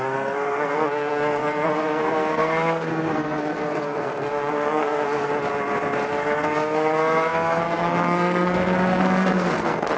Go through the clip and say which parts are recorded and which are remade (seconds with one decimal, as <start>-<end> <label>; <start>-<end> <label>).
0.0-5.3 remade; 5.3-6.1 recorded; 6.1-10.0 remade